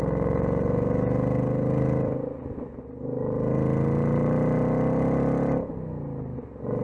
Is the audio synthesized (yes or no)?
no